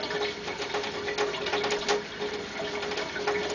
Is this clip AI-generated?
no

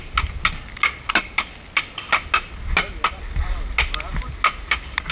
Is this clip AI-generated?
no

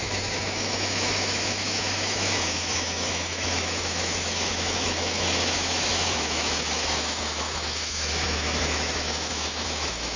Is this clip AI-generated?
yes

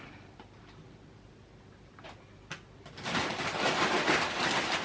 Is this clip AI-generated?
no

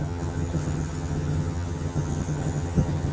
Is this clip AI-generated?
yes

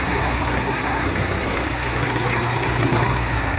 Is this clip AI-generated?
yes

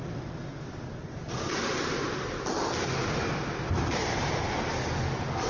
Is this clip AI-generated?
no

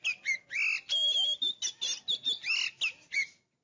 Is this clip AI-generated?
no